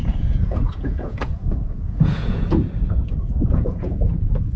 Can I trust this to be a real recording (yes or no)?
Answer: no